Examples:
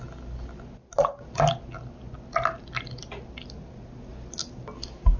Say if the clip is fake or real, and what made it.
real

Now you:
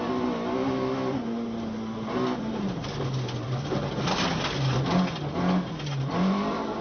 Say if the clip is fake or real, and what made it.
real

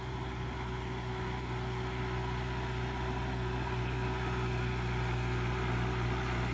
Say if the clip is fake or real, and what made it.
real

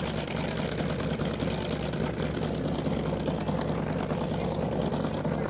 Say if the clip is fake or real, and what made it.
real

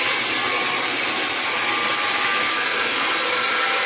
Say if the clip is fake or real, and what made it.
real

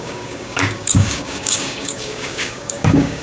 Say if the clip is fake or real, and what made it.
fake, codec, DAC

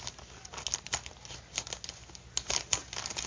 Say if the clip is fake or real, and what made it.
real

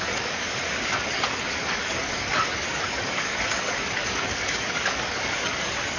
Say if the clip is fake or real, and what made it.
fake, codec, DAC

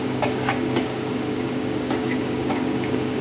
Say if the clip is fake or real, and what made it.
fake, codec, DAC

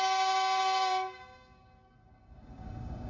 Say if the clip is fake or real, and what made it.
fake, codec, DAC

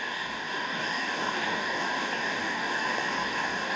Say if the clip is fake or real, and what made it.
fake, codec, DAC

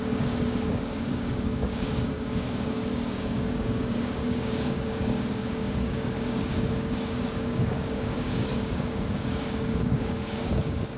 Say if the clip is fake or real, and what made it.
fake, codec, DAC